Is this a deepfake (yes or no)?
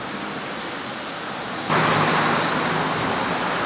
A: no